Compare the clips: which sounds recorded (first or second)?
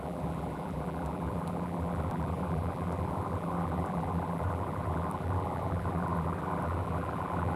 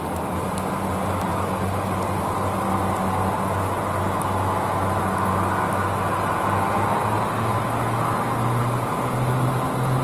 second